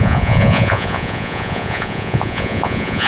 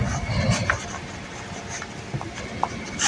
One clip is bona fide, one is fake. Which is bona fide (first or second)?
second